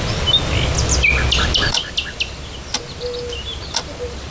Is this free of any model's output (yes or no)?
yes